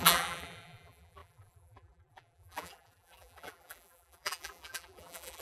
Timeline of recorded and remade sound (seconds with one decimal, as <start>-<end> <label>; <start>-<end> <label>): 0.0-5.4 remade